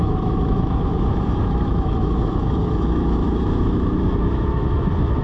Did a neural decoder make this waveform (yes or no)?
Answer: yes